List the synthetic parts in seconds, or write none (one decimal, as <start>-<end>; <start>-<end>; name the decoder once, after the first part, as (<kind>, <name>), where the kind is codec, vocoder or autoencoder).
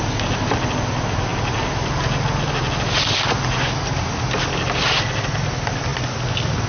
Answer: none